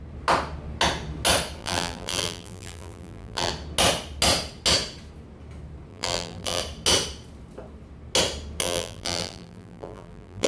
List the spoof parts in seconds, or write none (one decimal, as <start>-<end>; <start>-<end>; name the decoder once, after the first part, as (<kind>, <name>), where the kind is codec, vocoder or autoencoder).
1.6-3.5 (vocoder, BigVGAN v2); 5.9-6.6; 8.6-10.5

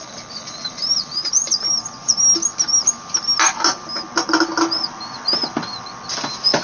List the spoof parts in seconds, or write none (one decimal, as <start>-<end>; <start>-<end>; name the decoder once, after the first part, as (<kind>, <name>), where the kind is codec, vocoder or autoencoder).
none

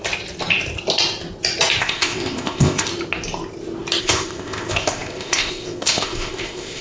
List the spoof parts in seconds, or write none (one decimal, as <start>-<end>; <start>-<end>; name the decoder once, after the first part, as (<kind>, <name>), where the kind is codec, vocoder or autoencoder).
1.8-2.9 (codec, ZipCodec); 4.0-6.8

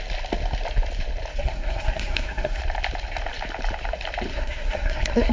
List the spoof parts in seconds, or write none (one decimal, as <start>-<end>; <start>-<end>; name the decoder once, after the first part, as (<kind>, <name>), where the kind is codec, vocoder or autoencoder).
1.3-2.6 (codec, SNAC); 4.3-5.3

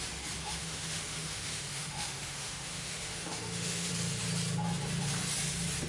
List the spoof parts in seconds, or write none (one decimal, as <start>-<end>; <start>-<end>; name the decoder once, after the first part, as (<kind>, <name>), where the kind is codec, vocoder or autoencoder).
0.4-3.9 (autoencoder, DAC-VAE)